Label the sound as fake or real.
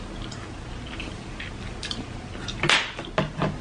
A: real